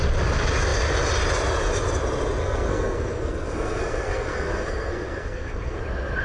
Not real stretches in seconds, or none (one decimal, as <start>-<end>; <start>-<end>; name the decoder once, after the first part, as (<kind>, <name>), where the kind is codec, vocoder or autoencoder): 2.4-5.8 (codec, SNAC)